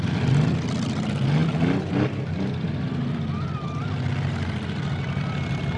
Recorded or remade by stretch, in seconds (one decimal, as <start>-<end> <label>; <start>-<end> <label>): 0.0-5.8 recorded